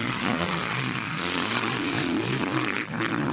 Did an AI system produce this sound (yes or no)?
yes